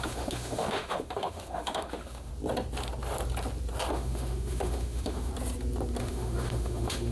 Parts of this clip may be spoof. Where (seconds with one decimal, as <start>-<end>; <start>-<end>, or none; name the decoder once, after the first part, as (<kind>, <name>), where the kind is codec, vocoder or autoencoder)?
0.0-2.3 (autoencoder, DAC-VAE); 3.9-5.3; 6.0-7.1